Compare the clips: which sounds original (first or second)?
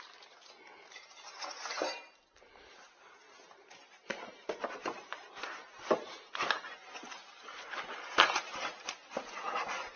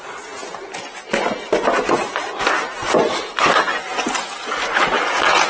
second